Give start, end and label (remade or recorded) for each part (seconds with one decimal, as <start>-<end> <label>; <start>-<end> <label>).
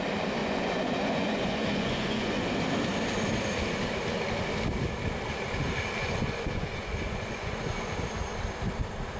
0.0-0.4 recorded; 0.4-2.4 remade; 2.4-6.0 recorded; 6.0-7.9 remade; 7.9-9.2 recorded